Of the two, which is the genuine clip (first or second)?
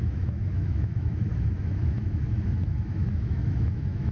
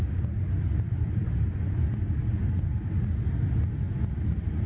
second